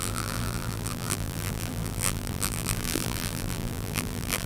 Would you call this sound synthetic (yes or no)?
yes